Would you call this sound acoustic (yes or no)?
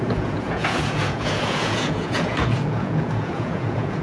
no